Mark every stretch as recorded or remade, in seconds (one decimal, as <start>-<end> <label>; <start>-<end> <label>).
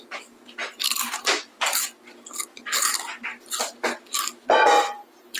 0.0-5.4 recorded